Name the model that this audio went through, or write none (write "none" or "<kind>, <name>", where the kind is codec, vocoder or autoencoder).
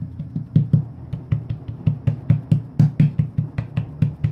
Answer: none